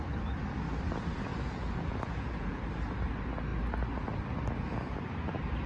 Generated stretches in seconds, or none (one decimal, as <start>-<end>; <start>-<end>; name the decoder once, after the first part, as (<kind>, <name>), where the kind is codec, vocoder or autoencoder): 1.3-2.6 (vocoder, Vocos)